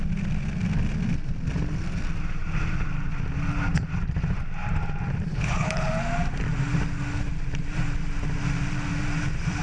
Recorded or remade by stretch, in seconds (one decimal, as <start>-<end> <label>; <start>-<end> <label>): 0.0-5.3 recorded; 5.3-5.9 remade; 5.9-9.6 recorded